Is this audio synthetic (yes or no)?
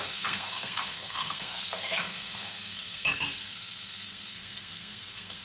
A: yes